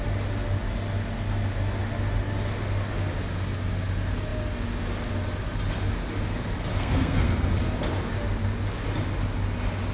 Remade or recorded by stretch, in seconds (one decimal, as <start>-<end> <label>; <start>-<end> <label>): 0.0-6.7 recorded; 6.7-7.3 remade; 7.3-9.9 recorded